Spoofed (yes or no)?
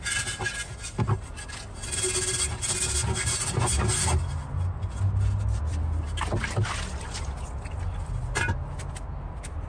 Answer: no